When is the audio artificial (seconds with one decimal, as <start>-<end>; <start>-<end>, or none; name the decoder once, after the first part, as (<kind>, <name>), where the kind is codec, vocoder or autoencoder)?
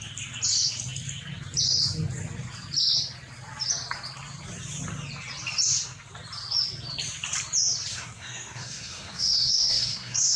7.9-10.4 (codec, SNAC)